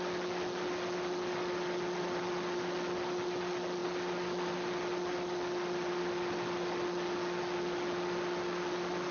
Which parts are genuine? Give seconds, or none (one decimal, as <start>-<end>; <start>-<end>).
0.0-9.1